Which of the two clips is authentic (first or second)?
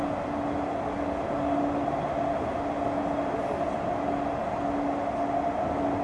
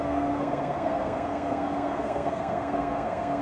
first